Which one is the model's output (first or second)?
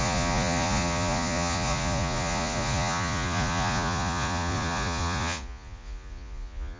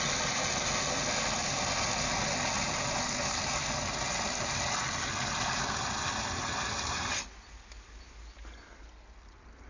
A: first